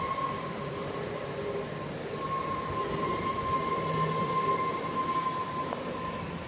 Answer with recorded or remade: recorded